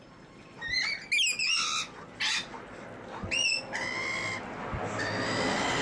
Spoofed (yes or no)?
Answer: no